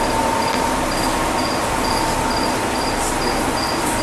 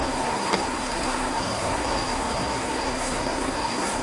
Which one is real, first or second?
first